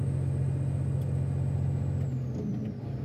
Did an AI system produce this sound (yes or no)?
no